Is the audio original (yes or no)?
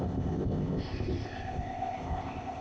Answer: no